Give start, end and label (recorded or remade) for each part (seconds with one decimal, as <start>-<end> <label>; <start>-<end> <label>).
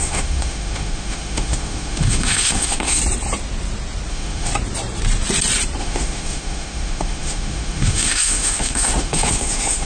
0.0-3.0 remade; 3.0-4.1 recorded; 4.1-4.5 remade; 4.5-5.8 recorded; 5.8-9.9 remade